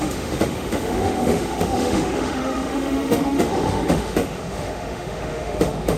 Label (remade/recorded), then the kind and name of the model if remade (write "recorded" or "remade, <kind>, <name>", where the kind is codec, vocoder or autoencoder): remade, autoencoder, DAC-VAE